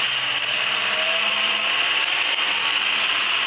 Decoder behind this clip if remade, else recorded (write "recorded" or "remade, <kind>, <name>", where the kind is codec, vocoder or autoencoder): recorded